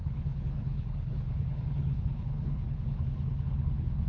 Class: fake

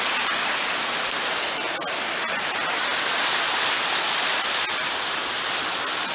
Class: real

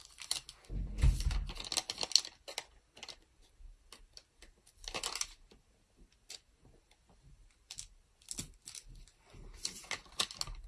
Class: real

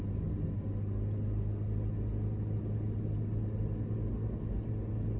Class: real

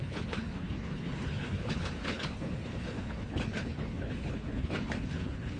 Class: fake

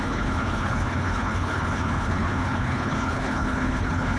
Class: fake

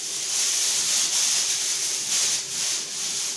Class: real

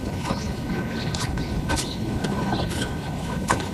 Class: fake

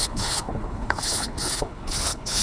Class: fake